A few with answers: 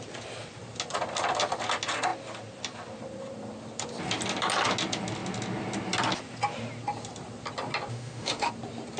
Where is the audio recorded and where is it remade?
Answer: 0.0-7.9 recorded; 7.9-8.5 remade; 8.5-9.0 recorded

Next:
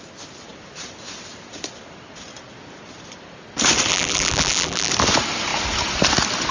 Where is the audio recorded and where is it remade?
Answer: 0.0-3.9 recorded; 3.9-4.9 remade; 4.9-6.5 recorded